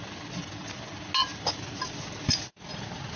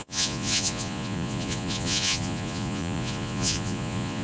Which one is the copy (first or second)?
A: second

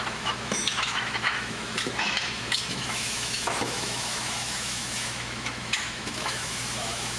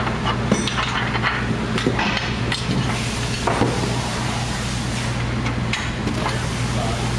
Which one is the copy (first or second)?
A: first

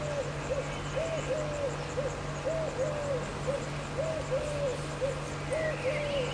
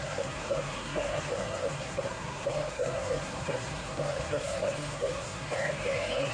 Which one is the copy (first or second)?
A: second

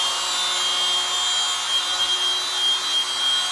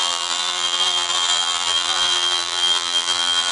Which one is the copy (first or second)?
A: second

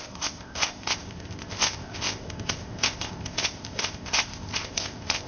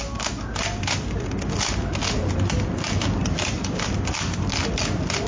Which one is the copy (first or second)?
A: first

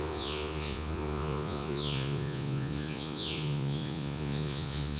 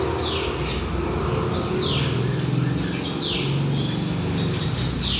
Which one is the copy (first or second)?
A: first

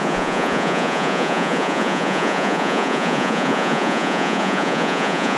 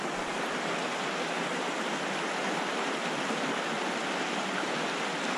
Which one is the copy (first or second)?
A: first